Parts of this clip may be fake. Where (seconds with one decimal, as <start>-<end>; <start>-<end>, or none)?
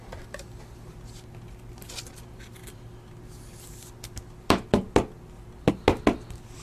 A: none